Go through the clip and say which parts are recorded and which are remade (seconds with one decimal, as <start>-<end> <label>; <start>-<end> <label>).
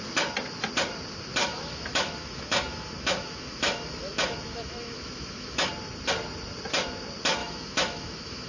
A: 0.0-1.4 recorded; 1.4-5.7 remade; 5.7-7.4 recorded; 7.4-8.5 remade